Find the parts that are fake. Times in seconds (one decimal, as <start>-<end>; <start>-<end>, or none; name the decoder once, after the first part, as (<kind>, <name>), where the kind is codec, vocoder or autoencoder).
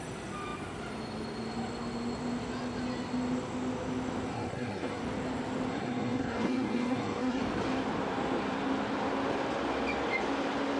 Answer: 4.3-5.0 (codec, SNAC); 5.7-7.4